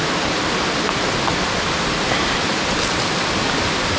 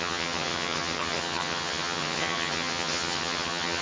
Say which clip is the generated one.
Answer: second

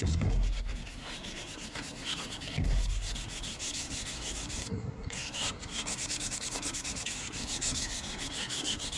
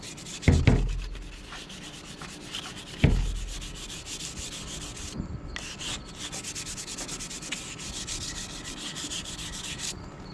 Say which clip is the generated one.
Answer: first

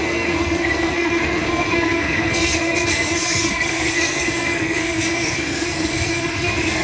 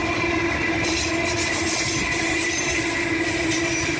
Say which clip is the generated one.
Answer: first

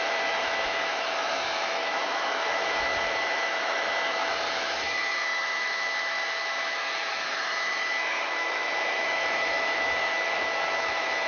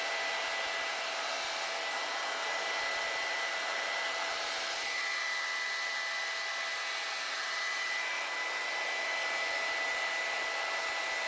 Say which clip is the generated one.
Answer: first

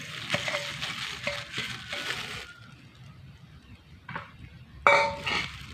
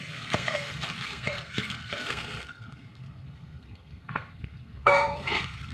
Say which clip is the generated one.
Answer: second